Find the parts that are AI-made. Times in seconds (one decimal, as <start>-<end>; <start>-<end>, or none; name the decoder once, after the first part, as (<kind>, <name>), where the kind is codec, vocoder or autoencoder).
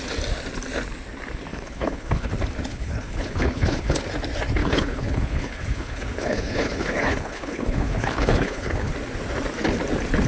1.5-2.3 (codec, HILCodec); 2.7-4.0; 4.6-8.9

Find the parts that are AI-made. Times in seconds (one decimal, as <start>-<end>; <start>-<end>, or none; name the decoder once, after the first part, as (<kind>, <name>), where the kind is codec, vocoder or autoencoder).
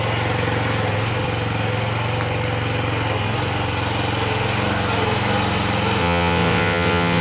6.0-7.2 (vocoder, WaveNeXt)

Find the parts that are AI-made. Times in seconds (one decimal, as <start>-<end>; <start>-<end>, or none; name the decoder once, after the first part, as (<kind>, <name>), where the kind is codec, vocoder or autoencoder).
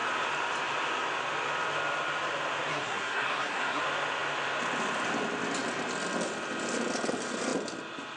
2.7-3.8 (codec, SNAC)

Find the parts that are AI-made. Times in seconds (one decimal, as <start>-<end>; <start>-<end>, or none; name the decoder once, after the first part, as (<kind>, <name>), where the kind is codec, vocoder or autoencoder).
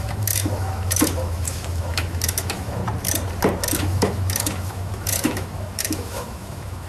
0.0-2.8 (autoencoder, DAC-VAE); 3.8-6.9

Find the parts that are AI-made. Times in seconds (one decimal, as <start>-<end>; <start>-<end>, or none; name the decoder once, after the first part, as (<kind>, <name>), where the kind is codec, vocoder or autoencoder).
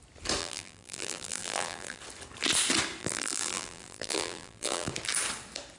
0.4-2.0 (vocoder, BigVGAN v2); 3.0-4.9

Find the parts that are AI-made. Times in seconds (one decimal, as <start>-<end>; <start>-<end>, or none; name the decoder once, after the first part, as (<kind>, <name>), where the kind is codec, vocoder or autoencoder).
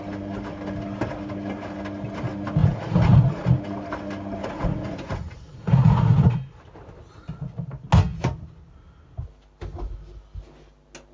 2.6-3.6 (vocoder, Vocos); 4.4-6.6